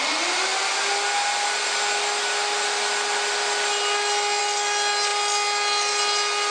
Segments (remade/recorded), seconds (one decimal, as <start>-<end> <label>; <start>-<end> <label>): 0.0-6.5 recorded